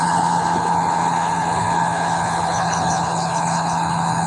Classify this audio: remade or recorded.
remade